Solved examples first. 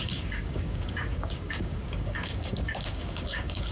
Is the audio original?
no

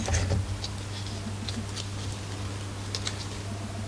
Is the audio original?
yes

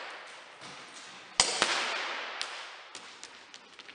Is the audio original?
yes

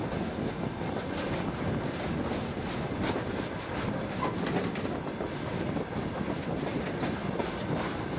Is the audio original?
yes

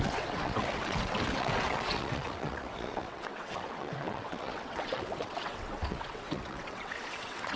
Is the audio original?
no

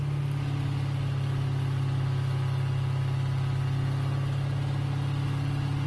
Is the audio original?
yes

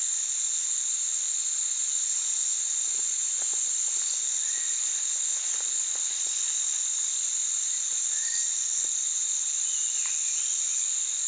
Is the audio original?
yes